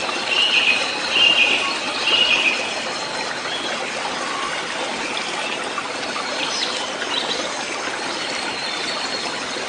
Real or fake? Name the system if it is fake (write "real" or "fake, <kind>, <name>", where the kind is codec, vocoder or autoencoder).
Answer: real